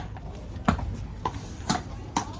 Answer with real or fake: real